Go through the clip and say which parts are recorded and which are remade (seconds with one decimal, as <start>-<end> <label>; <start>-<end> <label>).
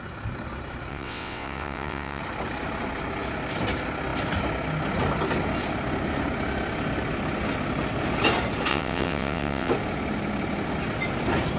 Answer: 0.0-0.9 recorded; 0.9-2.2 remade; 2.2-8.7 recorded; 8.7-9.7 remade; 9.7-11.6 recorded